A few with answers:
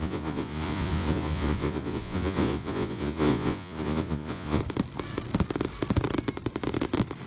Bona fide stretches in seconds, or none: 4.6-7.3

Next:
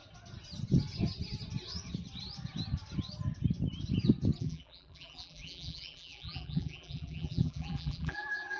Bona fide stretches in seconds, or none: 0.0-4.4